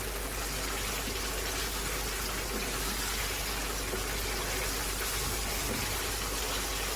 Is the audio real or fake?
real